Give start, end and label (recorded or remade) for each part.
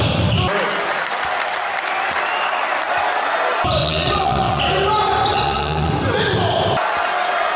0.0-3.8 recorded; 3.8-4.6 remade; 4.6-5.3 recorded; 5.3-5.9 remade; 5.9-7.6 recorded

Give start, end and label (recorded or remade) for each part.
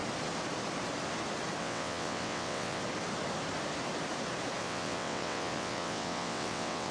0.0-1.6 recorded; 1.6-2.8 remade; 2.8-4.6 recorded; 4.6-6.9 remade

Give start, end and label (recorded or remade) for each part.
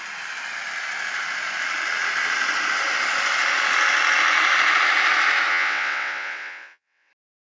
0.0-5.5 recorded; 5.5-7.1 remade; 7.1-7.5 recorded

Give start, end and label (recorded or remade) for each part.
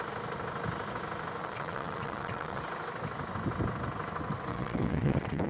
0.0-1.4 recorded; 1.4-2.6 remade; 2.6-4.5 recorded; 4.5-5.5 remade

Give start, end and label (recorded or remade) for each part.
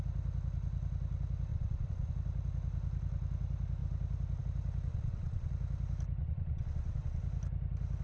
0.0-1.5 recorded; 1.5-2.1 remade; 2.1-4.9 recorded; 4.9-5.5 remade; 5.5-6.2 recorded; 6.2-7.2 remade; 7.2-8.0 recorded